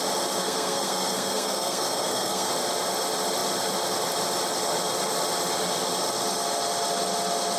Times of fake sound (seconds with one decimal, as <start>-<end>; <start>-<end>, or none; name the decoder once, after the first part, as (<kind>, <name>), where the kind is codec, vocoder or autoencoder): 0.4-2.5 (codec, SNAC)